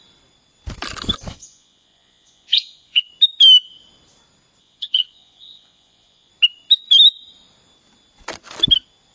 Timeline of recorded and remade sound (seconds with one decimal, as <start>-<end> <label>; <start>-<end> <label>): 0.0-1.3 recorded; 1.3-3.1 remade; 3.1-4.6 recorded; 4.6-6.3 remade; 6.3-9.1 recorded